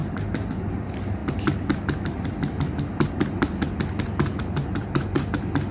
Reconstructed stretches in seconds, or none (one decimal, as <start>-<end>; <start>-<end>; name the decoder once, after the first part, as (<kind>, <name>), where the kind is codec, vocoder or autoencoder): 0.0-1.2 (vocoder, BigVGAN v2); 4.4-5.7